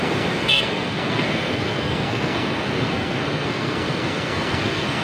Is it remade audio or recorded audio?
remade